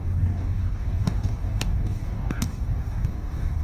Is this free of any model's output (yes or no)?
no